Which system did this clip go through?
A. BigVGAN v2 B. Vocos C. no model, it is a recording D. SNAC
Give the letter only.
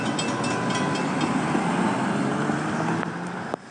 C